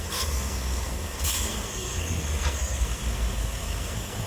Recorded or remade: remade